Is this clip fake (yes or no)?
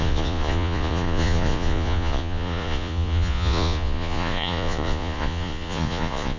yes